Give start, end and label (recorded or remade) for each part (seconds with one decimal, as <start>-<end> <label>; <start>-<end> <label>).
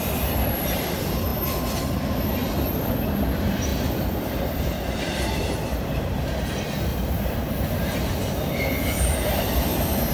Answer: 0.0-3.7 recorded; 3.7-4.9 remade; 4.9-6.9 recorded; 6.9-9.4 remade; 9.4-10.1 recorded